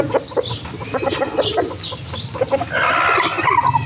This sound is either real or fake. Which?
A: real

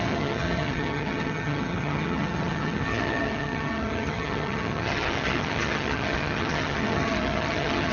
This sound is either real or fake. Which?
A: fake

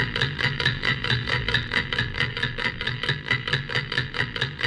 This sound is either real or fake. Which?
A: fake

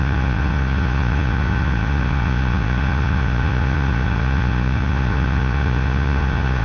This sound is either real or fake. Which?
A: fake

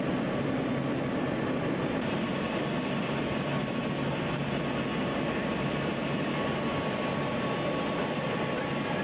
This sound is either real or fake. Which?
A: real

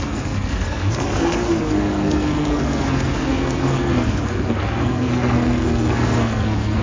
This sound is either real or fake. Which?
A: fake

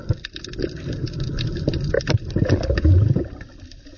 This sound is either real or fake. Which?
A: real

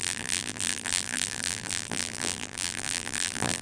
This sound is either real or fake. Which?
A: fake